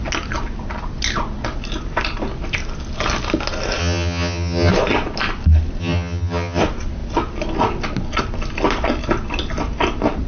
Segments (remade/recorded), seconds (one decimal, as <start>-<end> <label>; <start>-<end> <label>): 0.0-3.8 recorded; 3.8-4.7 remade; 4.7-5.8 recorded; 5.8-6.6 remade; 6.6-10.3 recorded